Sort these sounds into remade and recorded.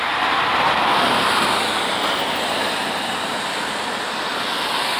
remade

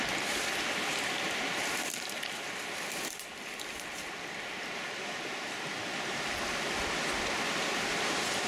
remade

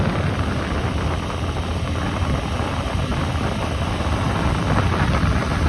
recorded